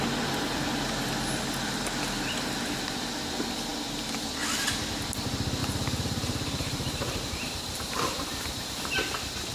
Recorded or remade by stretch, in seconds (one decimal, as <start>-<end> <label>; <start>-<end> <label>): 0.0-5.6 recorded; 5.6-9.1 remade; 9.1-9.5 recorded